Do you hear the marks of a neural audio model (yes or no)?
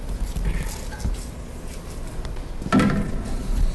no